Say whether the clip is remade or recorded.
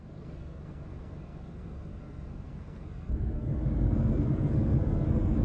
remade